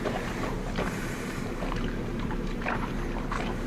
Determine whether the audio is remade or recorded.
remade